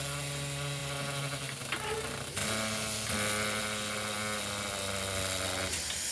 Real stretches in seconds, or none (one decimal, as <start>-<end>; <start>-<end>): 0.0-6.1